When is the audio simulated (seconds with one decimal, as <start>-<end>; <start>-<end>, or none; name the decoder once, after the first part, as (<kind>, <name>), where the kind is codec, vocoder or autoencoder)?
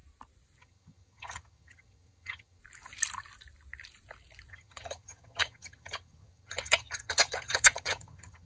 0.6-2.6 (vocoder, HiFi-GAN); 4.5-8.5